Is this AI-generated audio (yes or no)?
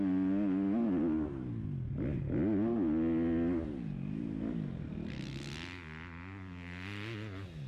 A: no